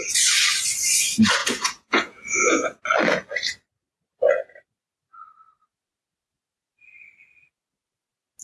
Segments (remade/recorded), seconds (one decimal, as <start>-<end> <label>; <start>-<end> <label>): 0.0-1.4 recorded; 1.4-2.8 remade; 2.8-8.4 recorded